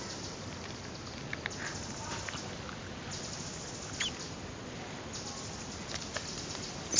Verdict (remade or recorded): recorded